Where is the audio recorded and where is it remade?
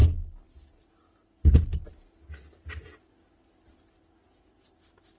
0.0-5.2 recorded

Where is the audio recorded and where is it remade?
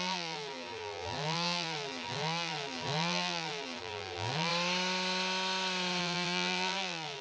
0.0-4.5 remade; 4.5-6.0 recorded; 6.0-7.2 remade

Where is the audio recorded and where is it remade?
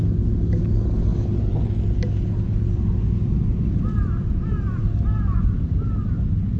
0.0-6.6 recorded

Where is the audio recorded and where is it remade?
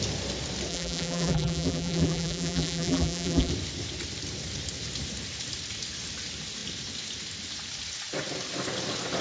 0.0-0.7 recorded; 0.7-3.5 remade; 3.5-9.2 recorded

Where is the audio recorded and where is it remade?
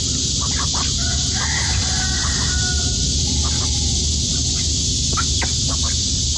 0.0-6.4 recorded